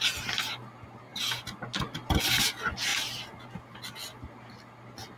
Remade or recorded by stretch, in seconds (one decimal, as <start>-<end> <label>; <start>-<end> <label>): 0.0-5.2 recorded